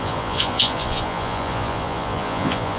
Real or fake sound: fake